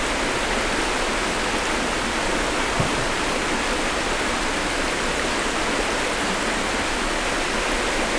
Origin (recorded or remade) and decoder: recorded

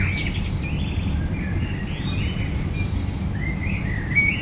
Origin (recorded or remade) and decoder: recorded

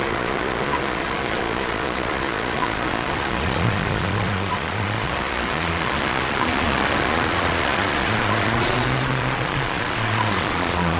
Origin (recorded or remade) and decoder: remade, vocoder, Vocos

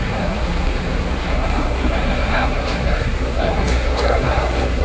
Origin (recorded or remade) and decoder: remade, codec, SNAC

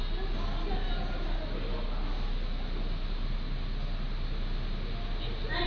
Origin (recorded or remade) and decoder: recorded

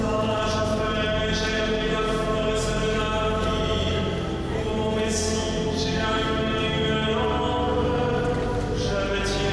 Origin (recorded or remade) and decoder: recorded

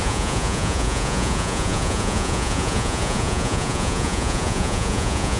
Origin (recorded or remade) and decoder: remade, vocoder, Vocos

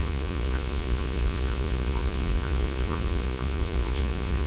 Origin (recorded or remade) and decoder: remade, vocoder, Vocos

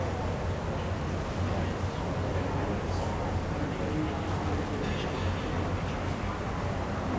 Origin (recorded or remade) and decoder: recorded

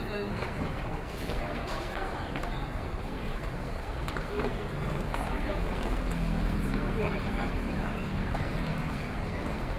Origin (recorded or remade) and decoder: remade, codec, SNAC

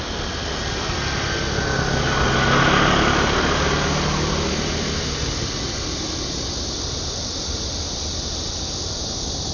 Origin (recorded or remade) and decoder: recorded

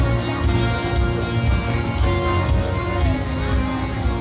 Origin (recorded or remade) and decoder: recorded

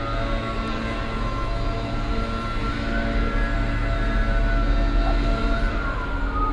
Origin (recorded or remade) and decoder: recorded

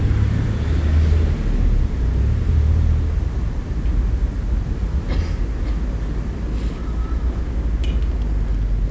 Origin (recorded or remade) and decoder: recorded